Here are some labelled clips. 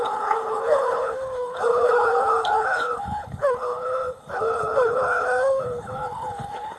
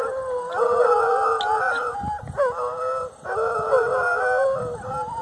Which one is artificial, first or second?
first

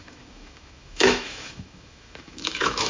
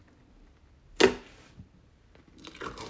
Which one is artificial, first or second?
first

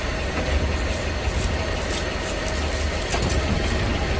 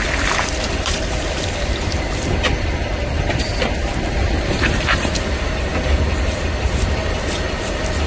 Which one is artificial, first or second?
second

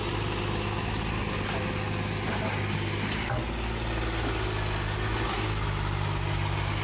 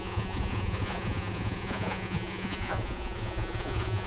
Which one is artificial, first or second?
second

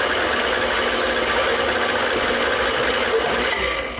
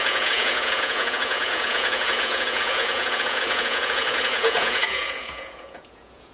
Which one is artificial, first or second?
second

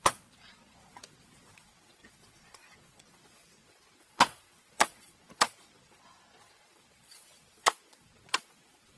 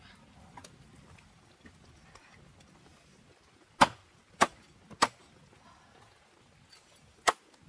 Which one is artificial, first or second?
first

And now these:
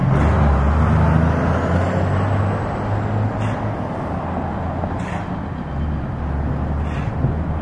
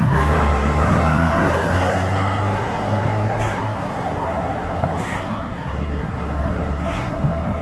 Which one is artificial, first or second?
second